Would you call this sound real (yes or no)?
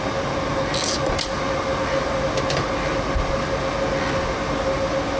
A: yes